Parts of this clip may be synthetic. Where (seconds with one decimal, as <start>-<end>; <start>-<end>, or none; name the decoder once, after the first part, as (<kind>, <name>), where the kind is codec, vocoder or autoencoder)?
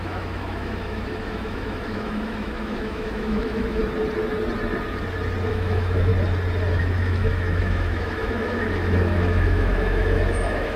0.0-3.8 (autoencoder, DAC-VAE); 5.5-6.1; 6.8-10.8